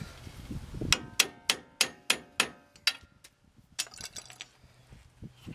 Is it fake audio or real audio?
real